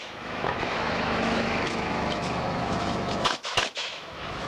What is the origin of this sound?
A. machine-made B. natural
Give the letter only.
A